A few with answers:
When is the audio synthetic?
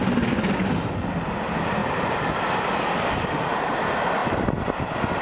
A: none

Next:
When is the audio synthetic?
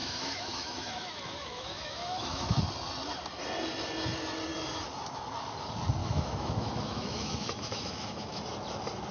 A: 0.0-2.6 (autoencoder, DAC-VAE); 6.0-8.4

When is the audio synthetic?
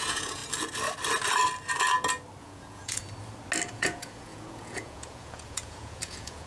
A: 0.0-0.4 (vocoder, Vocos); 2.4-3.0; 3.7-6.5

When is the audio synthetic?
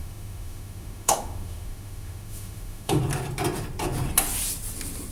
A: 0.0-3.0 (autoencoder, DAC-VAE)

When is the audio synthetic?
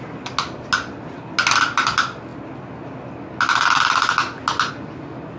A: none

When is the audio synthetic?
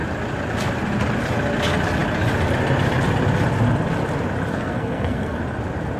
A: 4.5-5.4 (codec, SNAC)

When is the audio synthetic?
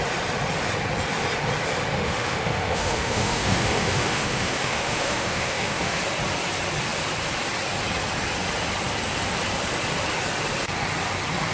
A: 1.9-6.0 (autoencoder, DAC-VAE)